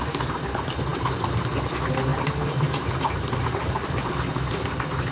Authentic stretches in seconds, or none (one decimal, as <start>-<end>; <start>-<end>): 0.0-2.1; 4.3-5.1